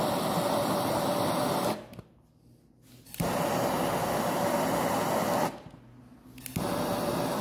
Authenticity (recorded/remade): recorded